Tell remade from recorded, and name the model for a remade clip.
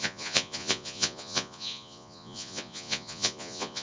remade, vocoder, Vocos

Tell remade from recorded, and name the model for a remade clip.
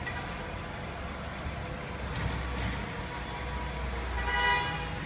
recorded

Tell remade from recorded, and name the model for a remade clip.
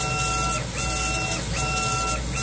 recorded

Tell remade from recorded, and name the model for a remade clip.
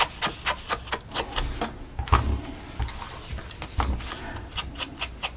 recorded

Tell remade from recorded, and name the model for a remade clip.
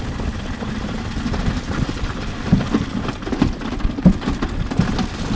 recorded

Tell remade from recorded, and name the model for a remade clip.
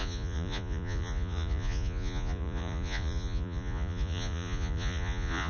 remade, vocoder, Vocos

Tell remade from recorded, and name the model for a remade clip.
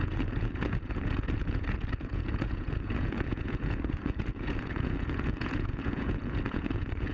remade, vocoder, Vocos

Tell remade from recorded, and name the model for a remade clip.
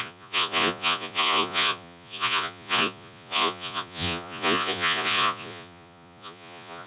remade, vocoder, Vocos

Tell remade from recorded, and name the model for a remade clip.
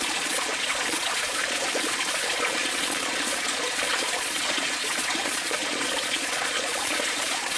remade, vocoder, Vocos